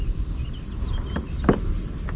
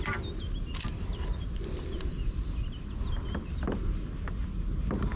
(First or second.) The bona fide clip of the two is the second